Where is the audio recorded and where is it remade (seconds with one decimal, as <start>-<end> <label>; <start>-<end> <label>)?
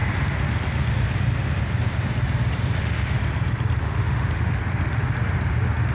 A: 0.0-2.8 recorded; 2.8-3.2 remade; 3.2-3.8 recorded; 3.8-4.6 remade; 4.6-5.9 recorded